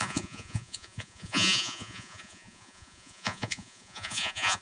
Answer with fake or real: fake